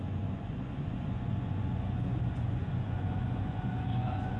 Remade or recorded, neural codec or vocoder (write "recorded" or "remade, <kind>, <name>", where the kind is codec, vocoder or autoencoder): remade, vocoder, Vocos